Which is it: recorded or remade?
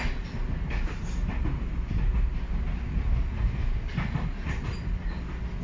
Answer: recorded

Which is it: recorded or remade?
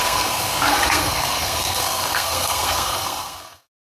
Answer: remade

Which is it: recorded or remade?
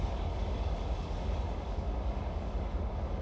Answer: remade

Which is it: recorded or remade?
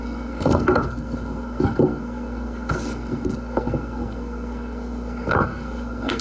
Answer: remade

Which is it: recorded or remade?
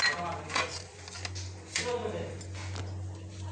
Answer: recorded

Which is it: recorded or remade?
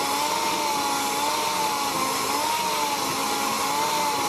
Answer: recorded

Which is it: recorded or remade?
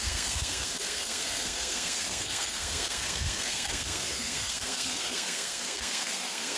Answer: remade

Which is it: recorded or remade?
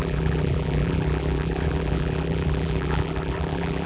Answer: remade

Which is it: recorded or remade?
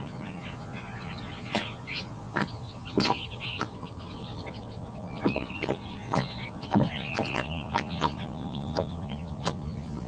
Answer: remade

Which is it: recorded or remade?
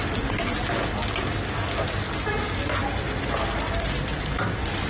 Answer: recorded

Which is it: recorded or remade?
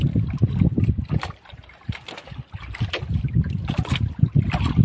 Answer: recorded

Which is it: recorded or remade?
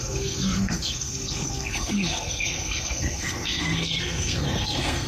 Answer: remade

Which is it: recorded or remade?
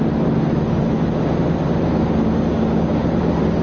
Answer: recorded